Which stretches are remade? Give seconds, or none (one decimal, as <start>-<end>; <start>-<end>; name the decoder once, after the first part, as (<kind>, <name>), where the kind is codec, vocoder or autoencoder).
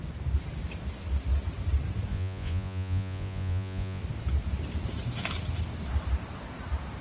2.1-4.0 (vocoder, Vocos)